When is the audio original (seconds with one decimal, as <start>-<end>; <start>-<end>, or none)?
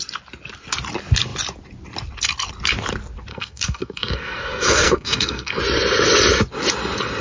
0.0-3.3; 5.6-7.2